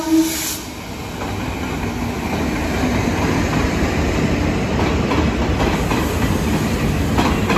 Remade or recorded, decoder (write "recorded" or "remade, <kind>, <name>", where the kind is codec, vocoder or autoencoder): recorded